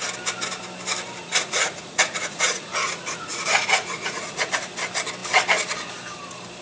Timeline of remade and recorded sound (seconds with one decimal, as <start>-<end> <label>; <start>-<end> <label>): 0.0-1.2 recorded; 1.2-4.5 remade; 4.5-6.6 recorded